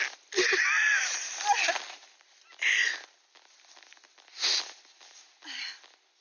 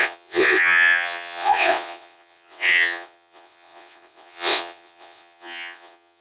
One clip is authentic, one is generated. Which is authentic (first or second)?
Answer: first